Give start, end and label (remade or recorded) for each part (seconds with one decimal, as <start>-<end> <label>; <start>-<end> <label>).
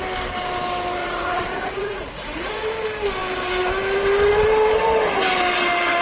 0.0-1.0 recorded; 1.0-2.5 remade; 2.5-6.0 recorded